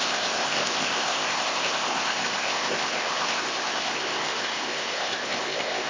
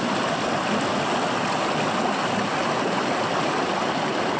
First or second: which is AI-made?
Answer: first